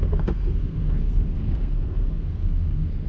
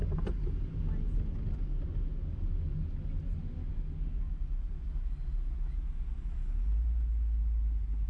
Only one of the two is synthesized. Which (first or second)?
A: first